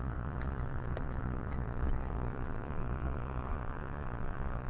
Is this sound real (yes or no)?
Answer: no